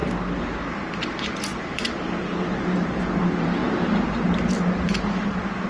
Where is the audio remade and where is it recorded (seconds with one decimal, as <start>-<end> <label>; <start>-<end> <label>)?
0.0-3.2 remade; 3.2-3.6 recorded; 3.6-4.2 remade; 4.2-5.7 recorded